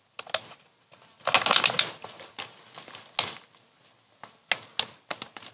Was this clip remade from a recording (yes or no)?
no